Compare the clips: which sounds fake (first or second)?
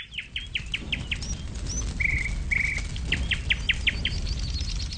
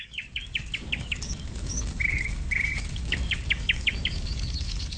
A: second